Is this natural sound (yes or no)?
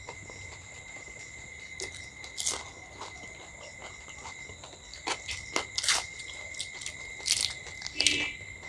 yes